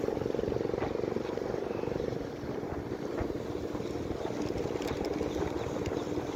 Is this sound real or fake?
real